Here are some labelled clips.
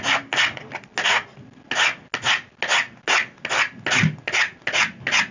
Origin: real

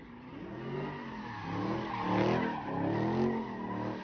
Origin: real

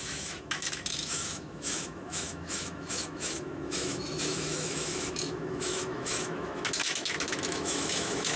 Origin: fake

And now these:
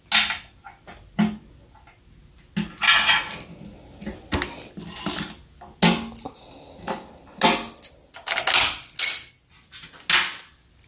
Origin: real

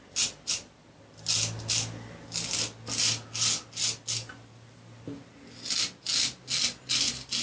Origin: real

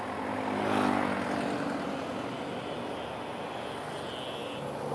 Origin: real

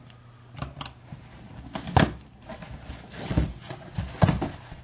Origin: real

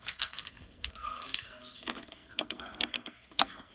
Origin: fake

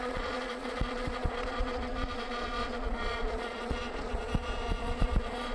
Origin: fake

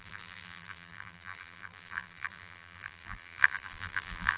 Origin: fake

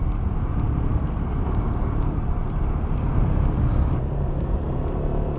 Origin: fake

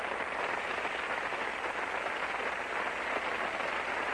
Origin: real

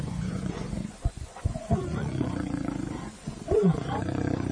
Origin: fake